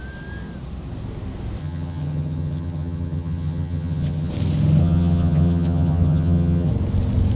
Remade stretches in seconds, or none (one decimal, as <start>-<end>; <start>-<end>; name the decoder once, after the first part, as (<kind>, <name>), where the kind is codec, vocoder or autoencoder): 1.6-4.3 (vocoder, HiFi-GAN); 4.8-6.7